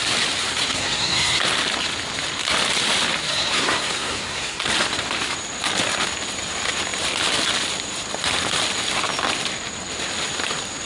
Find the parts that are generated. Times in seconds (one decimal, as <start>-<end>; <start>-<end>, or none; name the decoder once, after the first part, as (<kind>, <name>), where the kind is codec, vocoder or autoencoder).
0.7-1.4 (codec, SNAC); 3.3-4.6